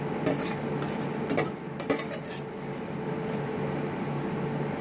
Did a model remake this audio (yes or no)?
no